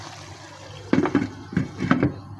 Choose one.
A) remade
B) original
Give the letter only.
B